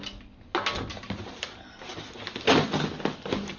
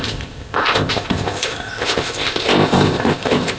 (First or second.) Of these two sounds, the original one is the first